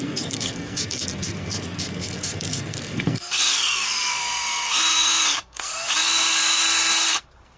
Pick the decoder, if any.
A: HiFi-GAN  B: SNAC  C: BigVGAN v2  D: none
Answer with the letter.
B